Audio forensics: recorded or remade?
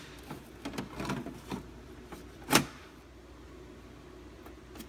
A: recorded